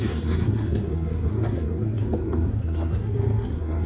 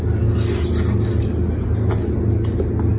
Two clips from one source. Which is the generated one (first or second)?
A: first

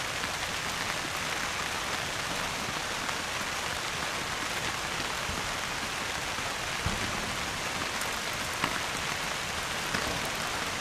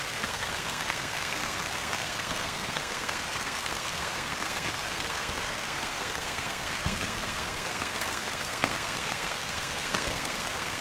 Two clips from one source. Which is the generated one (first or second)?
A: second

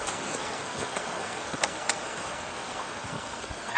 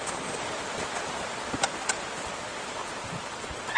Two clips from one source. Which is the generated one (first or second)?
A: first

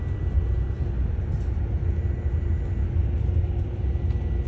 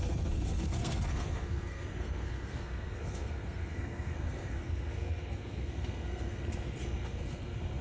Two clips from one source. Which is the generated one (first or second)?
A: second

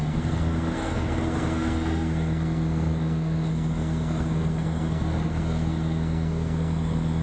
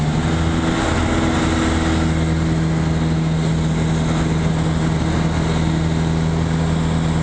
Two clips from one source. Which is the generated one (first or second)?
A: first